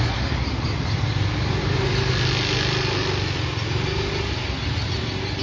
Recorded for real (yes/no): yes